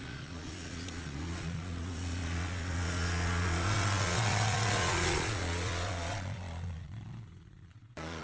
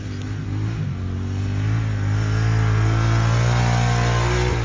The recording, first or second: second